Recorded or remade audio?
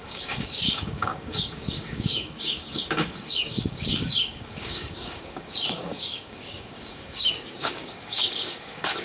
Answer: remade